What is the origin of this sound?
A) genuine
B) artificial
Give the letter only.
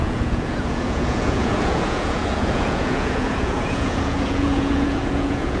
B